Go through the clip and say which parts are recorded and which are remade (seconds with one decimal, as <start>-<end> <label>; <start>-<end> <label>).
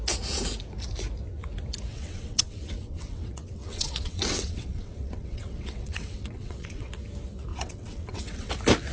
0.0-1.9 recorded; 1.9-6.9 remade; 6.9-7.5 recorded; 7.5-8.5 remade; 8.5-8.9 recorded